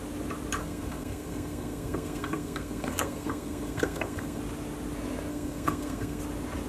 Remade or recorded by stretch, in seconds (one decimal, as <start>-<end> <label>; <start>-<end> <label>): 0.0-0.6 recorded; 0.6-4.4 remade; 4.4-5.3 recorded; 5.3-6.2 remade; 6.2-6.7 recorded